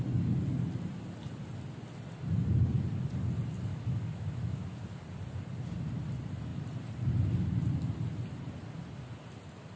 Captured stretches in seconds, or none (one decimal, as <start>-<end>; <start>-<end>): 0.0-3.7; 4.8-9.8